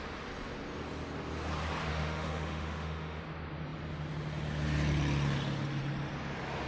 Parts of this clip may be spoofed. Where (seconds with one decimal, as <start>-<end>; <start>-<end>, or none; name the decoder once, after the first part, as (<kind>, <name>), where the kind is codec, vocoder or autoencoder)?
1.9-3.2 (autoencoder, DAC-VAE)